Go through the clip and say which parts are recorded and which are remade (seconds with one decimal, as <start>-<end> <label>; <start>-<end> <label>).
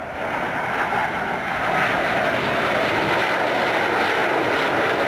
0.0-5.1 recorded